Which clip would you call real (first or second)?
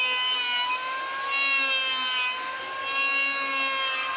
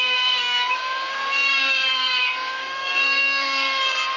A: first